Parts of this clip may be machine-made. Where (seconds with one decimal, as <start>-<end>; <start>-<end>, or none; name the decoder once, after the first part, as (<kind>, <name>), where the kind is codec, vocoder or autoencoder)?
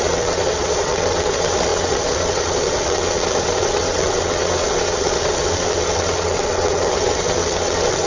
0.0-8.1 (vocoder, WaveNeXt)